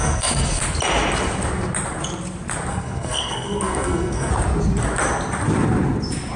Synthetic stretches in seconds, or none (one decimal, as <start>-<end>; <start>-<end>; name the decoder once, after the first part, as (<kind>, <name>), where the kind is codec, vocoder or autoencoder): 0.0-0.6 (codec, SNAC); 2.7-4.3